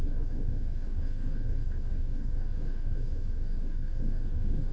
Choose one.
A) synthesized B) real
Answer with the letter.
A